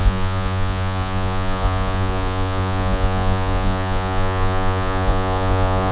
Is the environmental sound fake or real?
fake